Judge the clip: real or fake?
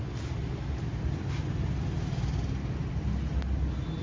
real